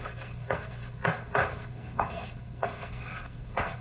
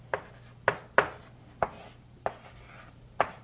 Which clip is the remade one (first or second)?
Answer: first